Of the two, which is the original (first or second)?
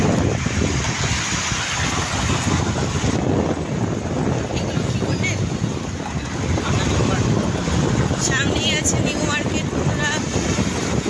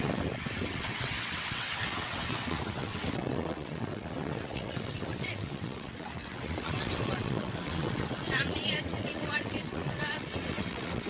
first